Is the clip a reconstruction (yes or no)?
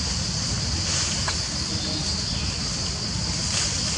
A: no